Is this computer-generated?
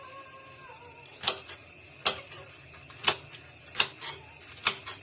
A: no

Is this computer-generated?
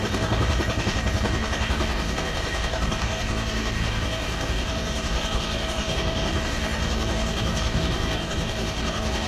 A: yes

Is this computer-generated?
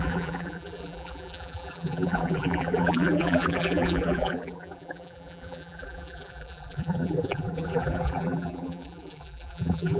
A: yes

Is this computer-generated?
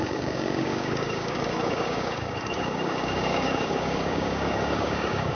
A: yes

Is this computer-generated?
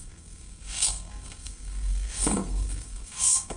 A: yes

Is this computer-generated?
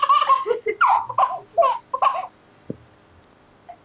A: no